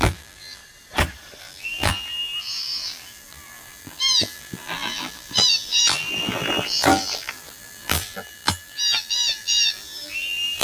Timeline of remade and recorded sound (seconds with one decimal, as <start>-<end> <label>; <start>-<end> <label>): 0.0-0.6 remade; 0.6-1.4 recorded; 1.4-10.6 remade